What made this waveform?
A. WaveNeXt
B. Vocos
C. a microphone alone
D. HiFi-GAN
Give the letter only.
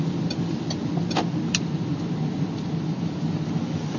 C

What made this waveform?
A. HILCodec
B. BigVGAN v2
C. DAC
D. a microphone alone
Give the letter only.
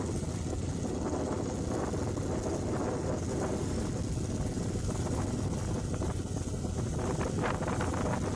D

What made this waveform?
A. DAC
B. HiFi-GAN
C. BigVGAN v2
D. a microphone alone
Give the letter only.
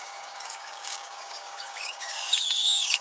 A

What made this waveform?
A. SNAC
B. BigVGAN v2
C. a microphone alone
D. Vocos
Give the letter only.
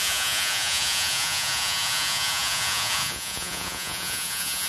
D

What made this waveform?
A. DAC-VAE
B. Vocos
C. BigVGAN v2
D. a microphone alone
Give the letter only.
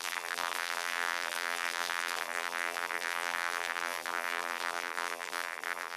C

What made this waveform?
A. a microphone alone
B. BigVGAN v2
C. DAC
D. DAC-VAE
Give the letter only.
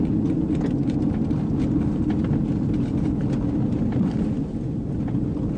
A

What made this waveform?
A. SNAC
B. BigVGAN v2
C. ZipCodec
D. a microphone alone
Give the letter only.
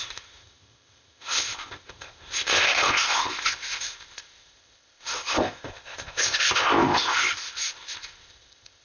C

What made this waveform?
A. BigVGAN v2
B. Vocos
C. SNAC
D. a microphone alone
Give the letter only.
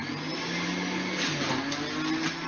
D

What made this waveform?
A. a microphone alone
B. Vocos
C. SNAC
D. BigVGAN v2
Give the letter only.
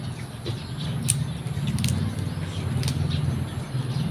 A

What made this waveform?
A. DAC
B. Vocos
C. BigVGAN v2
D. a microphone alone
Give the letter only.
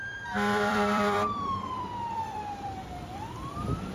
C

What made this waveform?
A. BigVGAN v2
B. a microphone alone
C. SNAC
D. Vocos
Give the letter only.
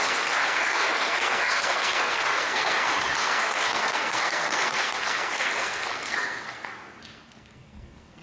C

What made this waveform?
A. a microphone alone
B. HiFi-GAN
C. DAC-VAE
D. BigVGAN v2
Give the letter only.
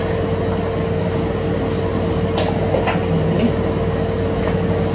A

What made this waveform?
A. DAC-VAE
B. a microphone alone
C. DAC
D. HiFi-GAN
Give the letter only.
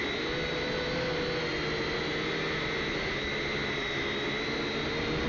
B